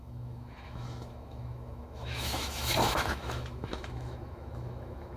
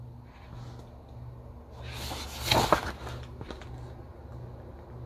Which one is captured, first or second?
second